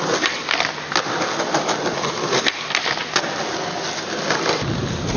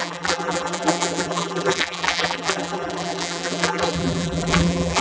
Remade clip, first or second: second